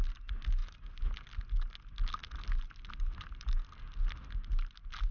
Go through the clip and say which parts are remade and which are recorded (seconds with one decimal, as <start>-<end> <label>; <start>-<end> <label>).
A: 0.0-5.1 recorded